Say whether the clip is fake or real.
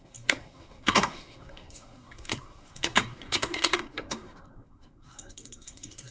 fake